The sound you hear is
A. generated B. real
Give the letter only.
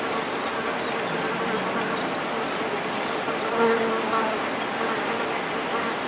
B